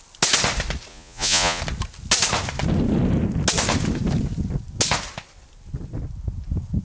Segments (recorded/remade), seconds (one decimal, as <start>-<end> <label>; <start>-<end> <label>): 0.0-0.9 recorded; 0.9-1.6 remade; 1.6-6.8 recorded